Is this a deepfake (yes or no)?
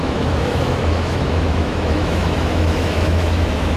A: yes